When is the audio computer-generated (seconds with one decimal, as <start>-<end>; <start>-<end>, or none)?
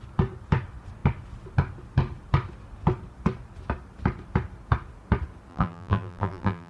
5.5-6.7